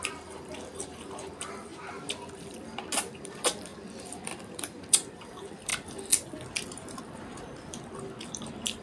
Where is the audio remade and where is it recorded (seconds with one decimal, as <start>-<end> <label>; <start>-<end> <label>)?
0.0-1.7 remade; 1.7-3.1 recorded; 3.1-5.7 remade; 5.7-7.0 recorded; 7.0-8.8 remade